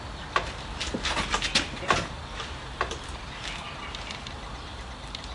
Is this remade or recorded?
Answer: recorded